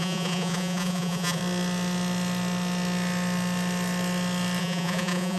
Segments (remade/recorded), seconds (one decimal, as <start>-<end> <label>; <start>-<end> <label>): 0.0-1.4 remade; 1.4-4.6 recorded; 4.6-5.4 remade